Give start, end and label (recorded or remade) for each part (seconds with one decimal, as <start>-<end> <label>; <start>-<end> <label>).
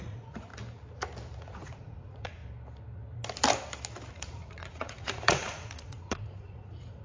0.0-0.5 remade; 0.5-1.4 recorded; 1.4-2.4 remade; 2.4-4.1 recorded; 4.1-7.0 remade